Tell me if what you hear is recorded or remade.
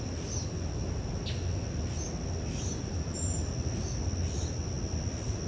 recorded